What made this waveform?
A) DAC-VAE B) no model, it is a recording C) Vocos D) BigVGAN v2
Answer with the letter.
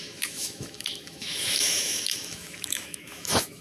A